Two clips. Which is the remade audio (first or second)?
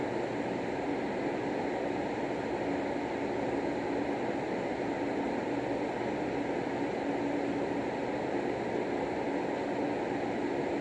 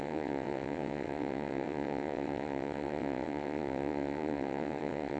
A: second